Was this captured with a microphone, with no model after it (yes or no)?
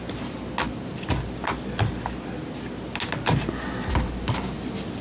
yes